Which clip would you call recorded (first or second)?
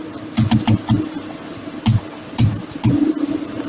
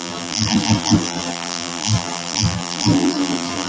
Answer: first